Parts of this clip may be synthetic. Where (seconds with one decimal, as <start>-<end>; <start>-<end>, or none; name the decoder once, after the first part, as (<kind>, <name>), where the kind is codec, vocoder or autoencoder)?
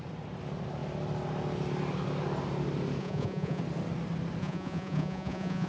3.0-3.6 (vocoder, Vocos); 4.4-5.7